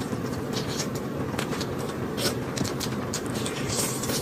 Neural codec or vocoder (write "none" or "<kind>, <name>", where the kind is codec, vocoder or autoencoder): vocoder, BigVGAN v2